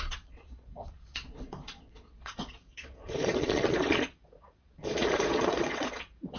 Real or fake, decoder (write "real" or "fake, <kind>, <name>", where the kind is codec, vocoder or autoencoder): fake, vocoder, Vocos